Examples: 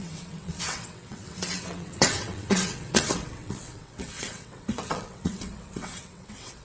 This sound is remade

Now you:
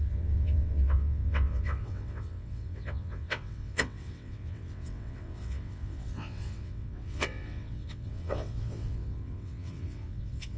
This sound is remade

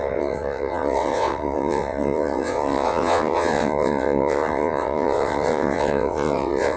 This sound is remade